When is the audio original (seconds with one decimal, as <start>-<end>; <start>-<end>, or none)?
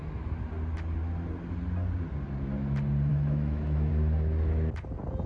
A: 0.0-3.1; 3.9-5.3